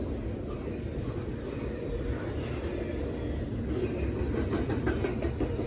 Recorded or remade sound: recorded